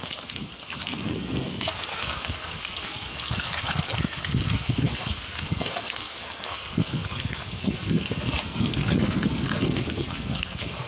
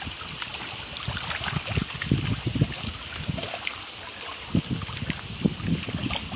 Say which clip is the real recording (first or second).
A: second